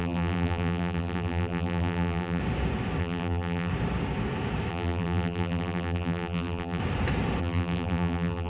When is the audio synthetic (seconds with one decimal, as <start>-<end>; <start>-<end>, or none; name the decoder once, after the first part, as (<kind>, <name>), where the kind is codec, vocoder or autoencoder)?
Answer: 0.0-2.4 (vocoder, BigVGAN v2); 3.0-3.7; 4.7-6.8; 7.4-8.5

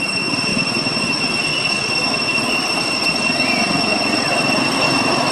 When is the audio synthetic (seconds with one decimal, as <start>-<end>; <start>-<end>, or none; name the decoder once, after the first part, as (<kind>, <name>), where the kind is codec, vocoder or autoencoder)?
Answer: 0.5-1.0 (vocoder, BigVGAN v2); 2.3-3.2

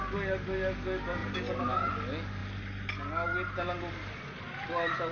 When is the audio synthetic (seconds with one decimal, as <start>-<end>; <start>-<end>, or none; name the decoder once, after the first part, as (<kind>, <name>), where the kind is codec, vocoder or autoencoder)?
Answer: 1.2-1.9 (vocoder, BigVGAN v2)

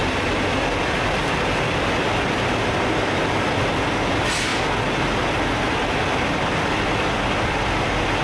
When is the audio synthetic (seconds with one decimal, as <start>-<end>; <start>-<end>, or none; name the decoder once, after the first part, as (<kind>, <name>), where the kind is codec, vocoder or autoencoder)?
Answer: 0.0-4.5 (vocoder, BigVGAN v2); 5.7-8.2

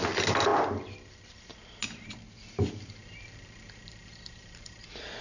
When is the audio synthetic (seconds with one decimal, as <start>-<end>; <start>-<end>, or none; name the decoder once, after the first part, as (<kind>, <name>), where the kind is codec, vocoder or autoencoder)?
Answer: 0.5-1.3 (vocoder, BigVGAN v2)

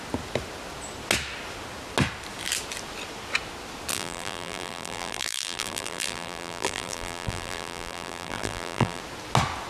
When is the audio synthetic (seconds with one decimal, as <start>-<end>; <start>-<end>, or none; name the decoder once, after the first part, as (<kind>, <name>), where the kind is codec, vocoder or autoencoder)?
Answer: 3.9-9.0 (vocoder, BigVGAN v2)

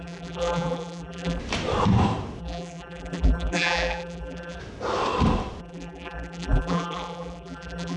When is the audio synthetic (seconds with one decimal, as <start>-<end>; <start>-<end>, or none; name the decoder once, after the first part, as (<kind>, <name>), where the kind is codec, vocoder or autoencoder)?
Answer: 0.0-1.4 (vocoder, BigVGAN v2); 2.4-4.6; 5.6-8.0

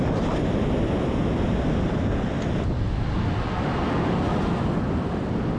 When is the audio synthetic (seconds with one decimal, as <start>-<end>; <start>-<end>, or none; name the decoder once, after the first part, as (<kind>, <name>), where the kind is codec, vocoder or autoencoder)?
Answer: none